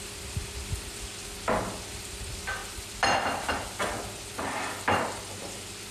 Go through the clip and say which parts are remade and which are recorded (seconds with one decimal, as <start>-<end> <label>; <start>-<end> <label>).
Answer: 0.0-5.9 recorded